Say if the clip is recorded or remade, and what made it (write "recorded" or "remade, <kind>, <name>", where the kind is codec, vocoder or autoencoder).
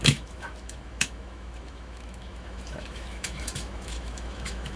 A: remade, autoencoder, DAC-VAE